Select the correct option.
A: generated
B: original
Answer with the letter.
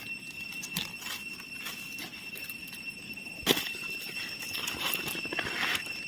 B